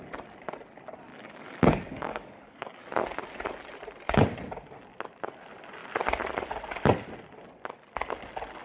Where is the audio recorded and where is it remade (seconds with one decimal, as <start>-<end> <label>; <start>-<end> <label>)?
0.0-1.1 recorded; 1.1-2.8 remade; 2.8-8.6 recorded